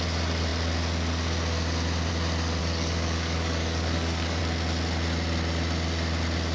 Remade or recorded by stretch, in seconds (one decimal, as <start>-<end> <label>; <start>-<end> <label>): 0.0-2.6 recorded; 2.6-4.4 remade; 4.4-6.5 recorded